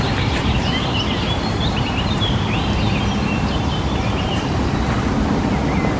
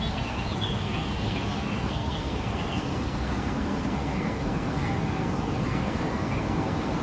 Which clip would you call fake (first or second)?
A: second